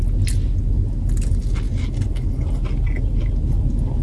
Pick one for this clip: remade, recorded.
recorded